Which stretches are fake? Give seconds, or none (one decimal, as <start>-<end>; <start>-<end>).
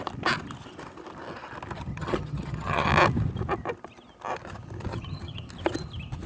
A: 1.9-2.9; 4.9-5.5